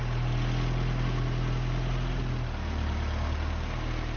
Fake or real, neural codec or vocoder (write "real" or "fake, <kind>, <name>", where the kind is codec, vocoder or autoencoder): real